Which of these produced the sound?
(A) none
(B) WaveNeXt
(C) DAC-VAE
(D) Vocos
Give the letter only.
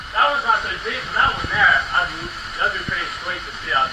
C